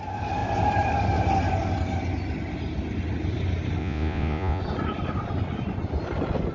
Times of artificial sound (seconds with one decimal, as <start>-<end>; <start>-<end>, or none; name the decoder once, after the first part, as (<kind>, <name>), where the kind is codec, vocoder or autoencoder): 3.8-4.6 (vocoder, Vocos)

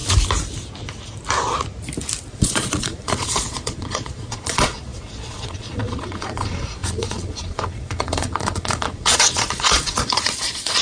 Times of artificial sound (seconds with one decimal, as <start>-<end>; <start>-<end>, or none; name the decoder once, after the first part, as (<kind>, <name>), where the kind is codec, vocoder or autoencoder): 2.3-10.8 (vocoder, Vocos)